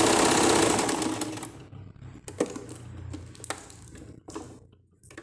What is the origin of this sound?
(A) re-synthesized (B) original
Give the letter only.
B